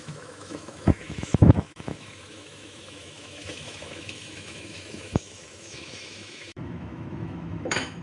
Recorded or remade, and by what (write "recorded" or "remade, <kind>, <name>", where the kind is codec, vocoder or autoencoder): remade, autoencoder, DAC-VAE